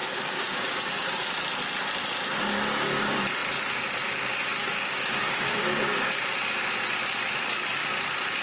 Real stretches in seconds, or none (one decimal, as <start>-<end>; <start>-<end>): 1.3-4.6; 6.1-8.4